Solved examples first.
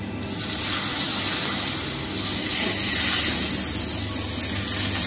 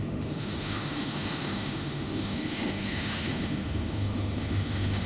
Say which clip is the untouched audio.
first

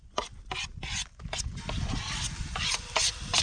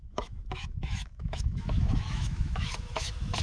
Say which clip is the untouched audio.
first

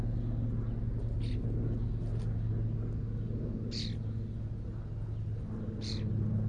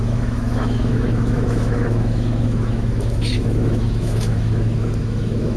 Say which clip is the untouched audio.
first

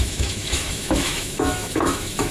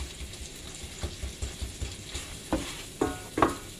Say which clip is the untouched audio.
second